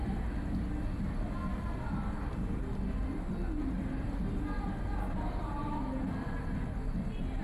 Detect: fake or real real